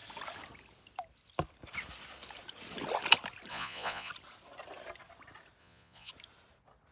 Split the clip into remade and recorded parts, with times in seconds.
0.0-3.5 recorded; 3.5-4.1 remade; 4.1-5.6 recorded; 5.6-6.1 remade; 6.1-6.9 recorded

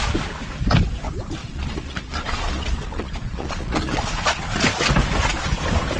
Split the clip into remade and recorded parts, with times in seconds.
0.0-1.4 recorded; 1.4-4.4 remade; 4.4-6.0 recorded

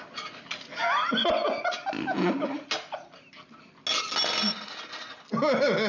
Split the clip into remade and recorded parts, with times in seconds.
0.0-5.9 recorded